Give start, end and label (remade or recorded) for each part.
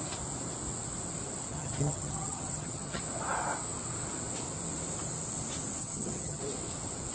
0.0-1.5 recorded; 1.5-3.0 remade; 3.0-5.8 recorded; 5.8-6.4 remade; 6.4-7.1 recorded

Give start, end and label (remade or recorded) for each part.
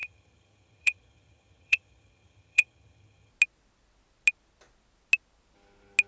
0.0-3.3 remade; 3.3-6.1 recorded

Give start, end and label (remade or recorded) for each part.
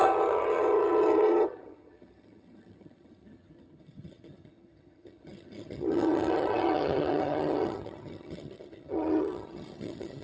0.0-10.2 remade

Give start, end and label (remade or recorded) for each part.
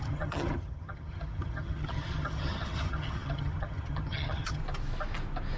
0.0-4.6 remade; 4.6-5.6 recorded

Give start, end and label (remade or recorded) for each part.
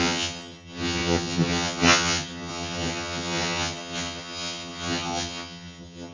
0.0-6.1 remade